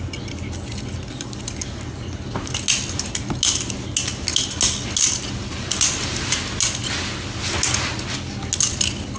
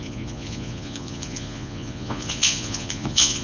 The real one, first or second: first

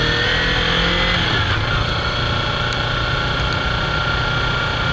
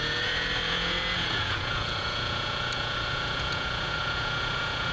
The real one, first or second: first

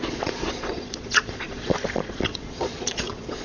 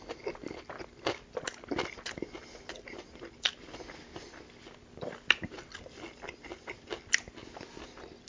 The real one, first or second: second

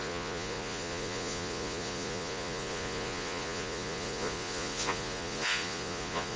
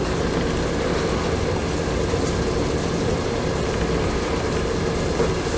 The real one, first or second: second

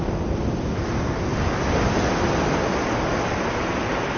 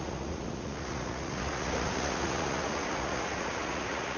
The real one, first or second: first